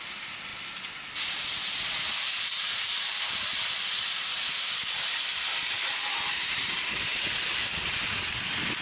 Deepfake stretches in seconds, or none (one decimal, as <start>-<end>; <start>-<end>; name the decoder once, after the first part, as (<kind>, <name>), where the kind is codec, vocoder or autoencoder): 4.3-7.7 (vocoder, BigVGAN v2)